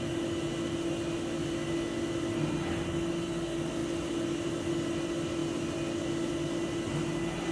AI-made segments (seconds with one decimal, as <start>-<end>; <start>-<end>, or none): none